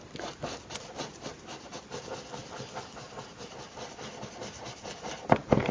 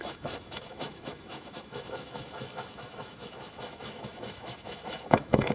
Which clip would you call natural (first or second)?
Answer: first